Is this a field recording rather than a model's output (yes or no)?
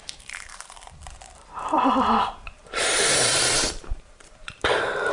no